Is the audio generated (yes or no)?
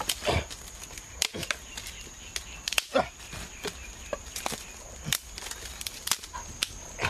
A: no